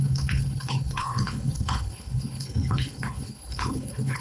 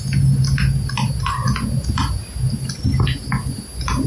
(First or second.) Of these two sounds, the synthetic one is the first